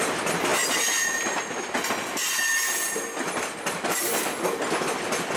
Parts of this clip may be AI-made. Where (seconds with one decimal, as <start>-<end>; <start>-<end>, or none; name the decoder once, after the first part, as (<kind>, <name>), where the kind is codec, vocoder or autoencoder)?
none

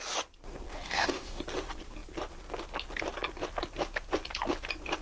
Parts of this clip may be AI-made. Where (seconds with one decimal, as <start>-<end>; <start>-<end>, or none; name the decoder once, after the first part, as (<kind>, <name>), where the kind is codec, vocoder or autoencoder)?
0.7-1.4 (autoencoder, DAC-VAE)

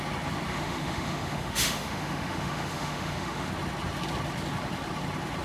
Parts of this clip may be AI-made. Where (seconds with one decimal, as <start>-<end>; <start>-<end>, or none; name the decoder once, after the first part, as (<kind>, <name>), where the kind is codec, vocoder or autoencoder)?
0.5-3.5 (autoencoder, DAC-VAE)

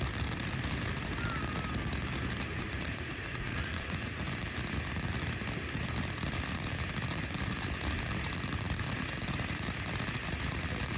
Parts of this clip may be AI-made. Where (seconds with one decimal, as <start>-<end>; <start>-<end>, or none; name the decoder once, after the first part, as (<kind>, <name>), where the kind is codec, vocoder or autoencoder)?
2.5-4.2 (vocoder, Vocos)

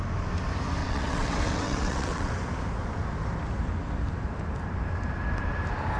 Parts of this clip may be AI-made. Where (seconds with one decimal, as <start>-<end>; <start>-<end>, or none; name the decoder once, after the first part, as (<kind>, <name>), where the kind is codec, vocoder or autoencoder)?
0.8-2.3 (vocoder, WaveNeXt)

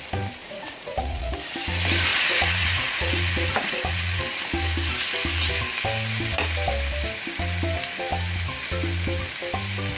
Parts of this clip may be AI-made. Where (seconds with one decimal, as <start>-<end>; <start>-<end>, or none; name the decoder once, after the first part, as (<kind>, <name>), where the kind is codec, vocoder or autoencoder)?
0.4-1.3 (vocoder, Vocos); 2.1-4.2